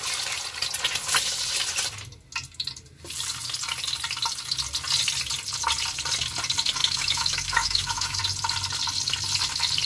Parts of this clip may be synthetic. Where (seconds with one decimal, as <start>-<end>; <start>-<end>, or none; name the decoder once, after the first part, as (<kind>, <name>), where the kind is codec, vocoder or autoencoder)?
6.8-8.2 (autoencoder, DAC-VAE)